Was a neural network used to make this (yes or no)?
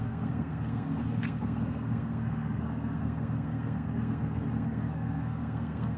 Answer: yes